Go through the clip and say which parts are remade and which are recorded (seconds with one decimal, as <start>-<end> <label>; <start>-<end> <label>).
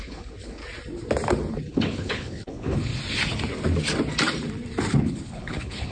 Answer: 0.0-0.6 remade; 0.6-1.5 recorded; 1.5-2.9 remade; 2.9-5.0 recorded; 5.0-5.9 remade